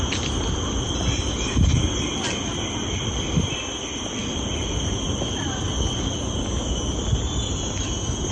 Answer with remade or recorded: recorded